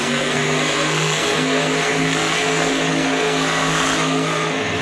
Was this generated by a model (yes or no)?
yes